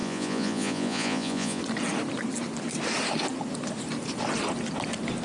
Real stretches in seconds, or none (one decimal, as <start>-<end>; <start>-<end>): 1.6-5.2